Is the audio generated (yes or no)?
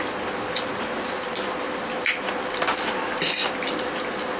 no